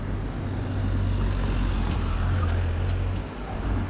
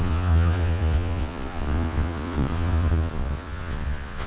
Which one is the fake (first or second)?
second